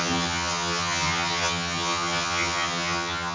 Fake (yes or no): yes